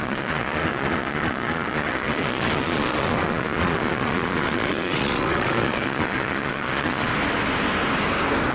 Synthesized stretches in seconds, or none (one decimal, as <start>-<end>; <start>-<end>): 0.0-7.1